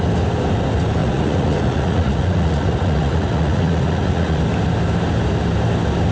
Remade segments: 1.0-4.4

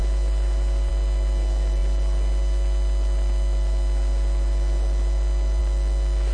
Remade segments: none

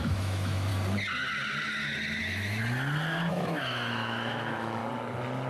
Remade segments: 0.0-0.7; 2.2-2.6; 3.3-4.8